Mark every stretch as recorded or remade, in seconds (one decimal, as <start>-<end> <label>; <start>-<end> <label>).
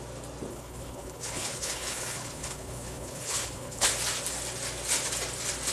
0.0-0.5 recorded; 0.5-3.9 remade; 3.9-5.7 recorded